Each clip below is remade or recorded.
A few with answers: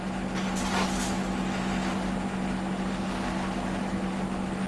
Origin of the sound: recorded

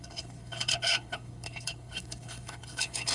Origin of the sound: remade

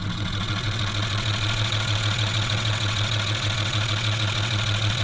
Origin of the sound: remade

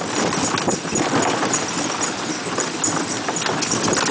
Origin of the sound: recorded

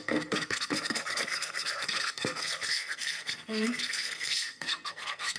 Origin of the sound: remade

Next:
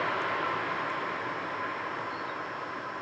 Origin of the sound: recorded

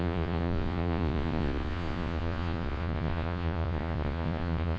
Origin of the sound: remade